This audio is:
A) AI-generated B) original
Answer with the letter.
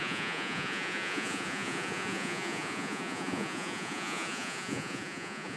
A